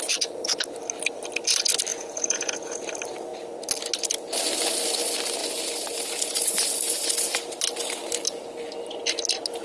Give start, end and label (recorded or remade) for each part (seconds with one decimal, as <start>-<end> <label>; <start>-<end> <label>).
0.0-1.9 recorded; 1.9-2.8 remade; 2.8-9.6 recorded

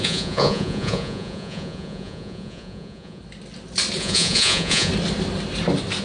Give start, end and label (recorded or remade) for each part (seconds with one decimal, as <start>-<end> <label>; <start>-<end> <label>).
0.0-3.2 remade; 3.2-4.0 recorded; 4.0-4.9 remade; 4.9-6.0 recorded

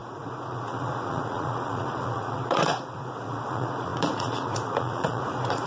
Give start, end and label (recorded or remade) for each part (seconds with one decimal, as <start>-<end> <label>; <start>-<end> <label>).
0.0-5.7 remade

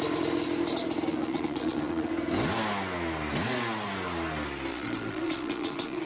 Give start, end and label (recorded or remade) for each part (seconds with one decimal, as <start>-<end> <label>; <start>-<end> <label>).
0.0-1.1 recorded; 1.1-2.1 remade; 2.1-4.7 recorded; 4.7-6.1 remade

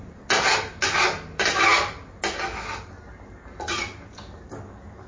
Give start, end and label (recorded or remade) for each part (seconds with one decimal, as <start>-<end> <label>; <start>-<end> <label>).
0.0-5.1 recorded